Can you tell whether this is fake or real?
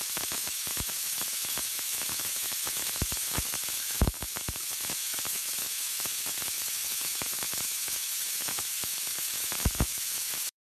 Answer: fake